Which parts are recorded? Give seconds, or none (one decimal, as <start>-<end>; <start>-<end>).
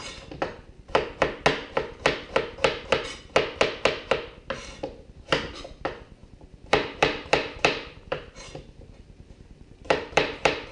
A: 0.0-6.2